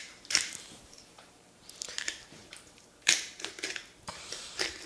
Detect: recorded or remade remade